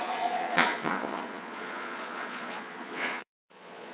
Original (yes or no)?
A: no